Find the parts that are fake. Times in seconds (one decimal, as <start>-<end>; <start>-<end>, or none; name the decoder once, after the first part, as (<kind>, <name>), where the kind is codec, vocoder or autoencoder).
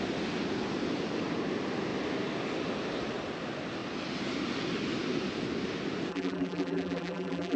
6.1-7.6 (vocoder, BigVGAN v2)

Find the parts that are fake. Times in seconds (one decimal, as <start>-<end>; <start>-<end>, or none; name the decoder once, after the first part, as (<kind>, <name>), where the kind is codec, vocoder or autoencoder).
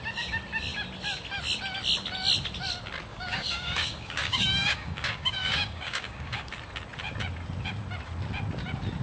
3.1-6.5 (codec, DAC)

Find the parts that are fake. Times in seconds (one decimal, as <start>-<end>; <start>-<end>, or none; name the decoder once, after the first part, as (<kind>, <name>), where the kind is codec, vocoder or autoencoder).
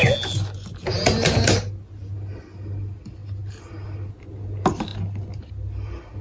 none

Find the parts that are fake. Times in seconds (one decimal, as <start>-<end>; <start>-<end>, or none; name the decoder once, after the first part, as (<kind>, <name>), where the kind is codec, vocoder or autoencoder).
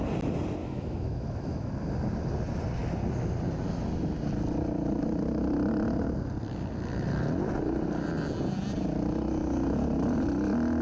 0.6-1.7 (autoencoder, DAC-VAE)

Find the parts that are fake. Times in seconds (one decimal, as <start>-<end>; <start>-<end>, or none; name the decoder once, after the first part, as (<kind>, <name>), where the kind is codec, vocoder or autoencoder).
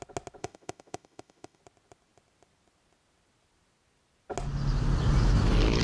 0.4-1.6 (autoencoder, DAC-VAE)